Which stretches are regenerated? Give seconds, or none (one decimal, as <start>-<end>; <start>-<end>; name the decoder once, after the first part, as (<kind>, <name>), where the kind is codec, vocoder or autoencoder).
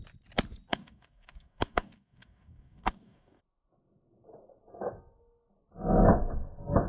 0.7-3.4 (codec, DAC)